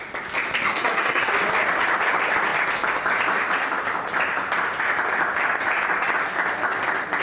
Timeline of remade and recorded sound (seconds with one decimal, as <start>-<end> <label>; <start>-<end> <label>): 0.0-0.6 recorded; 0.6-1.3 remade; 1.3-7.2 recorded